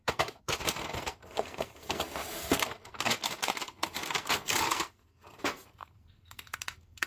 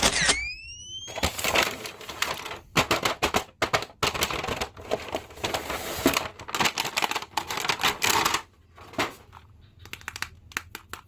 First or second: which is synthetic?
first